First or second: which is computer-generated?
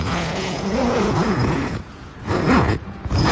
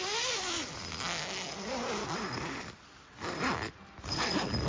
first